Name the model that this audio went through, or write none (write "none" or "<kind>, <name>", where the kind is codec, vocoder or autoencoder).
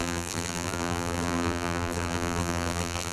vocoder, BigVGAN v2